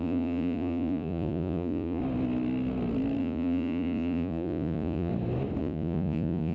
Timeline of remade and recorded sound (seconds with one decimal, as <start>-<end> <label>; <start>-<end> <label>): 0.0-2.0 remade; 2.0-3.2 recorded; 3.2-5.1 remade; 5.1-5.6 recorded; 5.6-6.5 remade